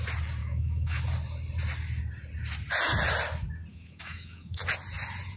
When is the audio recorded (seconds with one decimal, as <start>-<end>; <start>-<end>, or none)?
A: 0.0-0.4; 1.0-3.7; 4.6-5.4